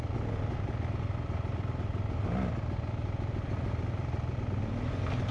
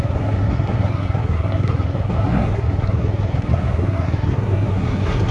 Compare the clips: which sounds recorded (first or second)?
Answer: first